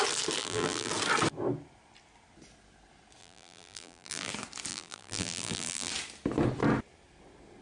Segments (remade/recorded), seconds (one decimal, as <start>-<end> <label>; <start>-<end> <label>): 0.0-0.4 recorded; 0.4-0.9 remade; 0.9-3.2 recorded; 3.2-4.3 remade; 4.3-4.7 recorded; 4.7-5.9 remade; 5.9-7.6 recorded